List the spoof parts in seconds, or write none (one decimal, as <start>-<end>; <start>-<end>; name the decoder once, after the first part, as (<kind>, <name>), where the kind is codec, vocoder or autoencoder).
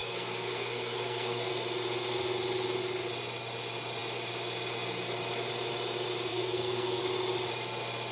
0.0-1.5 (codec, SNAC); 6.3-7.0